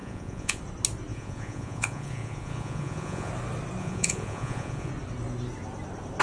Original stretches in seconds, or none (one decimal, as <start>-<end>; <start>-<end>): 0.6-1.1; 3.3-3.8; 4.9-6.2